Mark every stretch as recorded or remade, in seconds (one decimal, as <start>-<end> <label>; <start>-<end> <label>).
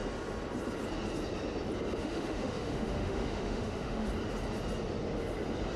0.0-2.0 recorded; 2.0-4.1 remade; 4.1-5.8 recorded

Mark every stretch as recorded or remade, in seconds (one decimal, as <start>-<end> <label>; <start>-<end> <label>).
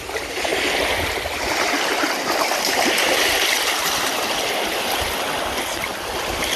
0.0-6.6 recorded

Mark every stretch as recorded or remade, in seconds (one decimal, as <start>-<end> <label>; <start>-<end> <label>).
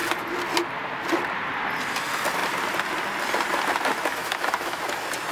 0.0-4.2 recorded; 4.2-4.8 remade; 4.8-5.3 recorded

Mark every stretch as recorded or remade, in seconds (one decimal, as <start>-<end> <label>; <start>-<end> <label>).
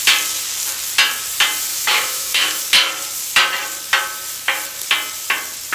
0.0-1.7 recorded; 1.7-2.6 remade; 2.6-5.7 recorded